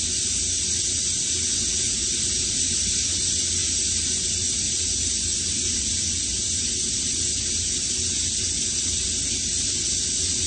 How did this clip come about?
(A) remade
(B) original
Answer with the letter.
B